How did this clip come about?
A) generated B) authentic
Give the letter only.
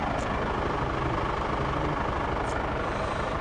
B